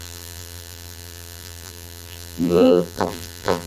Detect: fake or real fake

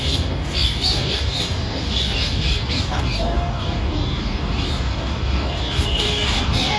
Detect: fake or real fake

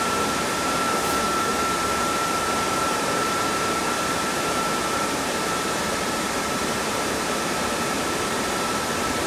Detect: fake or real fake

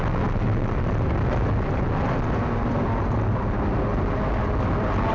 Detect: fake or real real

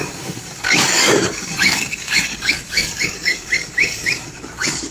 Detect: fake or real fake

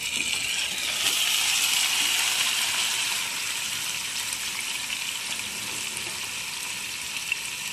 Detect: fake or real real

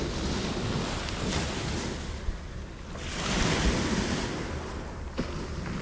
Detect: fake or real real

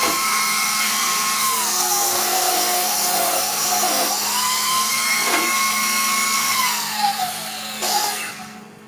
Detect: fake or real fake